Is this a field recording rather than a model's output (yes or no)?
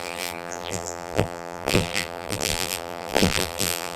no